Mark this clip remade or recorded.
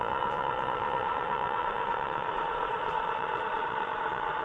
remade